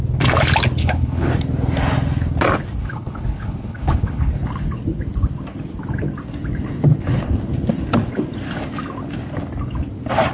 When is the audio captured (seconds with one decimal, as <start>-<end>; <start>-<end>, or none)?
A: 0.0-0.8; 1.3-2.8; 4.3-10.3